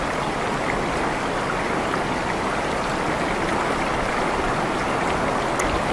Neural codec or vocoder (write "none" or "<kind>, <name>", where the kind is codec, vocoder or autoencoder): none